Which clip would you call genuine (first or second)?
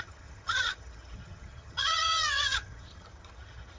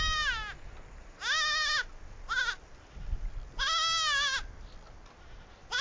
second